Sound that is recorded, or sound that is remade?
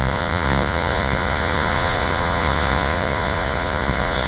remade